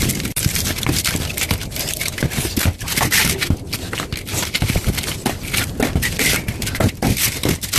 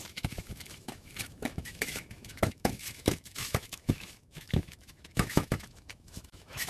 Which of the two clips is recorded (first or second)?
first